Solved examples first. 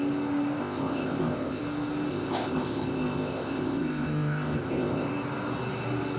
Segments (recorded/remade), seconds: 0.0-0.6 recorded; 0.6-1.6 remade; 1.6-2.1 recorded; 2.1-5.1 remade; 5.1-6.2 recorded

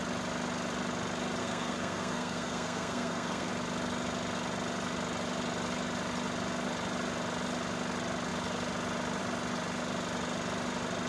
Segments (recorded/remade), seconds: 0.0-1.4 recorded; 1.4-3.5 remade; 3.5-11.1 recorded

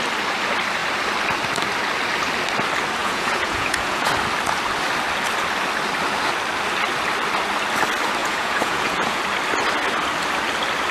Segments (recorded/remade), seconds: 0.0-3.0 recorded; 3.0-4.1 remade; 4.1-8.2 recorded; 8.2-9.2 remade; 9.2-10.9 recorded

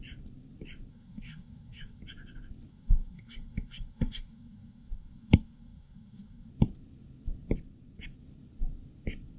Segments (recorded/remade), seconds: 0.0-0.9 recorded; 0.9-2.0 remade; 2.0-2.7 recorded; 2.7-6.5 remade; 6.5-9.4 recorded

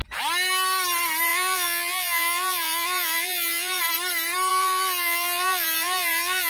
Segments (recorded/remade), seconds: 0.0-1.3 recorded; 1.3-3.8 remade; 3.8-4.5 recorded; 4.5-6.5 remade